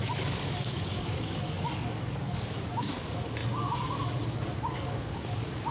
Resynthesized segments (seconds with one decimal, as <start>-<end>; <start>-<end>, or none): 0.0-3.4; 4.7-5.7